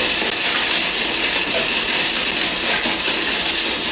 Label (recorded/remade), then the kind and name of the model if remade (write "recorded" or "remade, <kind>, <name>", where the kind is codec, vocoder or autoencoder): recorded